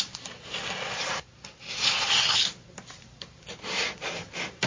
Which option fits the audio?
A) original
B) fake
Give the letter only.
B